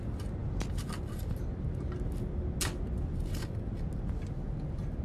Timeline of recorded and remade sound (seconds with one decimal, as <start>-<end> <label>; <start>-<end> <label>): 0.0-5.0 recorded